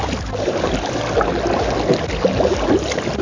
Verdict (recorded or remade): recorded